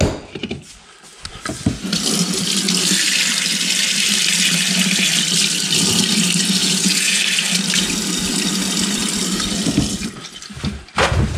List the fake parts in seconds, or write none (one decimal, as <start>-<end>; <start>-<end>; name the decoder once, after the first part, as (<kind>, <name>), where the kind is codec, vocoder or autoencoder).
6.6-7.2 (vocoder, Vocos)